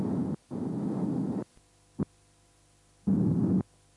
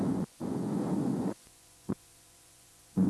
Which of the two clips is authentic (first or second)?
first